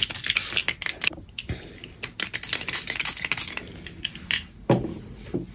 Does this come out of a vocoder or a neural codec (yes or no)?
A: no